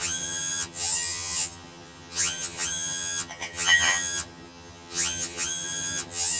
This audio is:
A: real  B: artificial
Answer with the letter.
B